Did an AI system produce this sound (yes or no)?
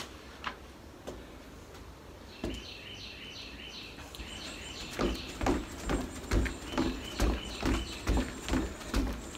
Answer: no